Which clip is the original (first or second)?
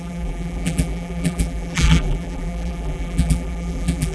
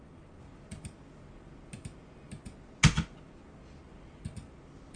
second